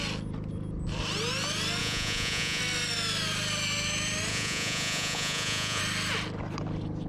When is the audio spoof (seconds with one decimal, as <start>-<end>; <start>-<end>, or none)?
1.8-2.6; 4.3-5.8